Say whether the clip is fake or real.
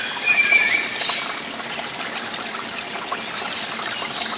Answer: real